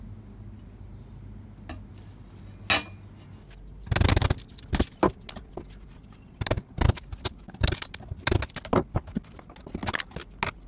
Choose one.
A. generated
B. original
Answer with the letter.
B